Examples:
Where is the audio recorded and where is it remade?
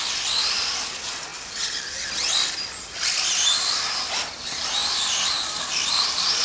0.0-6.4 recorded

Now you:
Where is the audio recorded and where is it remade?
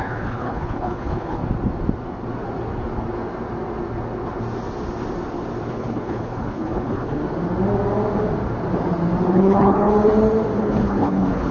0.0-1.4 remade; 1.4-5.7 recorded; 5.7-7.2 remade; 7.2-9.3 recorded; 9.3-9.9 remade; 9.9-10.6 recorded; 10.6-11.5 remade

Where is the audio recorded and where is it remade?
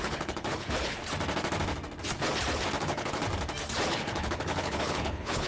0.0-1.0 remade; 1.0-2.8 recorded; 2.8-3.2 remade; 3.2-3.9 recorded; 3.9-5.5 remade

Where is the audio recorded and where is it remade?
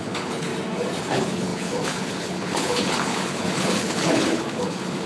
0.0-0.5 remade; 0.5-1.0 recorded; 1.0-5.1 remade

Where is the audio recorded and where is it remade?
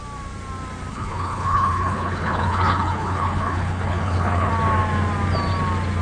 0.0-0.9 recorded; 0.9-4.5 remade; 4.5-6.0 recorded